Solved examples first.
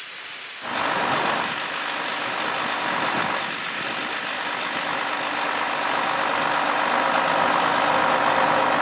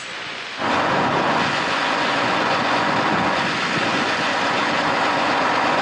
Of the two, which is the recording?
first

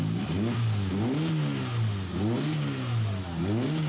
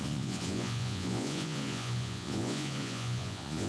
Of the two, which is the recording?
first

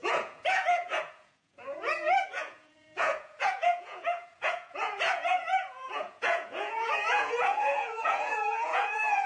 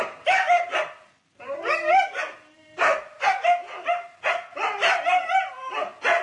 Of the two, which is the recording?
second